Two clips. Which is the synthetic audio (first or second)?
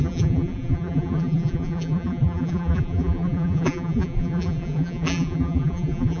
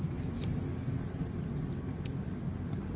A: first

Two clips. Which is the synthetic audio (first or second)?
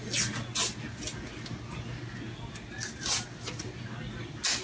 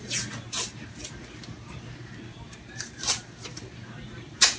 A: second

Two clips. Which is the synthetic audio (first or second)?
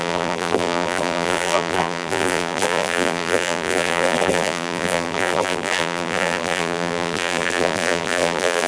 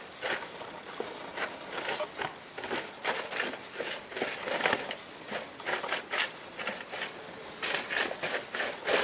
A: first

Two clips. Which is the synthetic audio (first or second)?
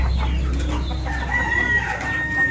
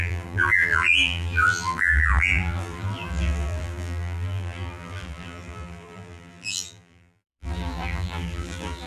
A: second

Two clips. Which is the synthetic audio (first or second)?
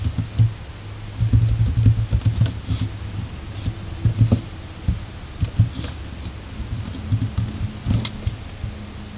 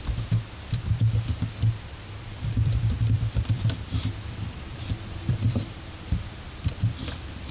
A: second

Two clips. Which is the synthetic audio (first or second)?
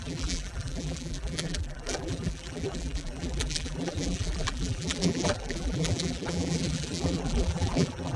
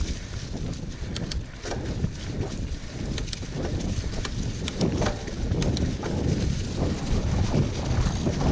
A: first